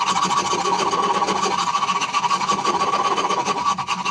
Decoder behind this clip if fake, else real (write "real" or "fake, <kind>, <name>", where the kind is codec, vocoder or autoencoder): real